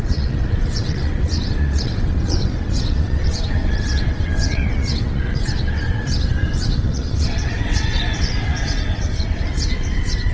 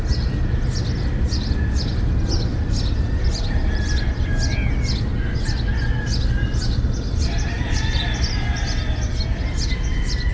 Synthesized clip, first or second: first